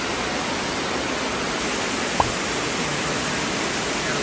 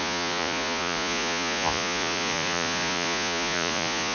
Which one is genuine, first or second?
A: first